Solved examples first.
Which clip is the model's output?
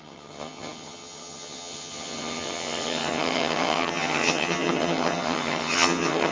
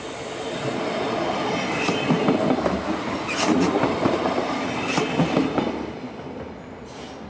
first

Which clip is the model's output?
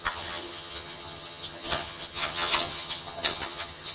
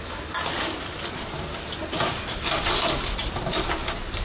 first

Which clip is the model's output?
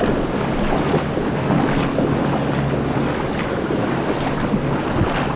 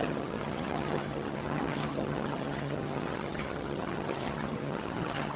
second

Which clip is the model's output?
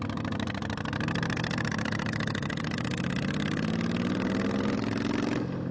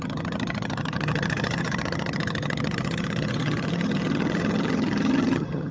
second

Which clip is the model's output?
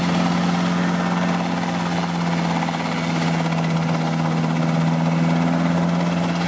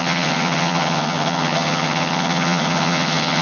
second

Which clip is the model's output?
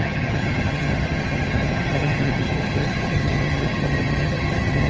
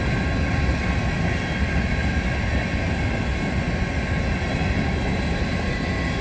first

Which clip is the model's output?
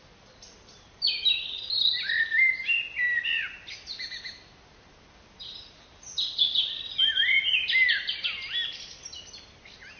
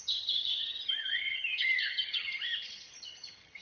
second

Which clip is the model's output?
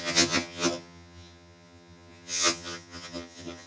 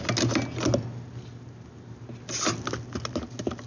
first